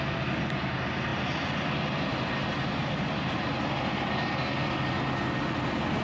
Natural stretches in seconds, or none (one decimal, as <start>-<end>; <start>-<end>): 0.0-6.0